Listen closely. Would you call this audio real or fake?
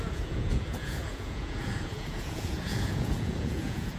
fake